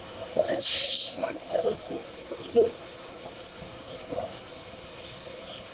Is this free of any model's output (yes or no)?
no